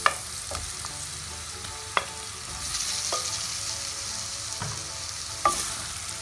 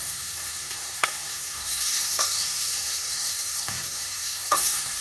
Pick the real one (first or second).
first